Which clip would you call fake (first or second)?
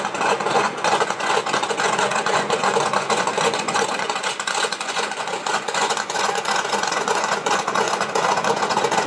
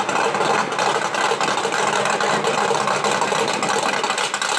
first